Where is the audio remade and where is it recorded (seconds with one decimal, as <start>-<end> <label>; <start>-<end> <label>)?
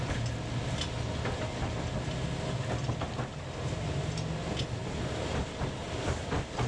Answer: 0.0-6.7 recorded